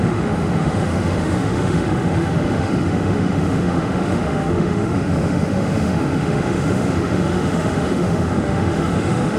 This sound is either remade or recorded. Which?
remade